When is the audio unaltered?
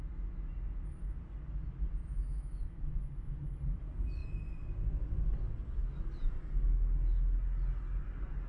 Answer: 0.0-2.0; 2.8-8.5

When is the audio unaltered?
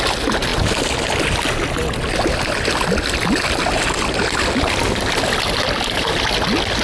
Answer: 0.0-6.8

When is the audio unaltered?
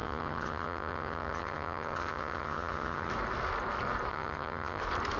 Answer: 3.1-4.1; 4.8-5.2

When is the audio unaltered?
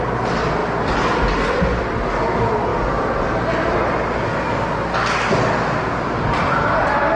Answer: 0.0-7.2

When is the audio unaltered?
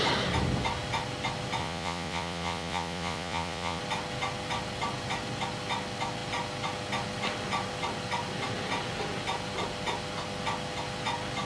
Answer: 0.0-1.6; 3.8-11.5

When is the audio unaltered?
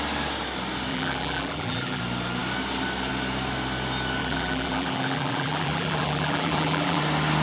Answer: 0.0-0.9; 2.0-4.2; 7.0-7.4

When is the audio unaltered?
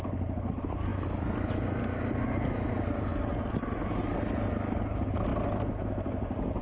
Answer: 0.0-6.6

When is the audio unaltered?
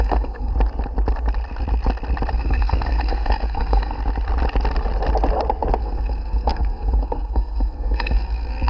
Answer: 0.5-2.3; 4.0-5.8